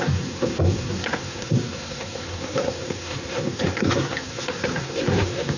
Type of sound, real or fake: fake